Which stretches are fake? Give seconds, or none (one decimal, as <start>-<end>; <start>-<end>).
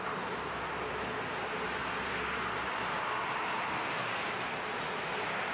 none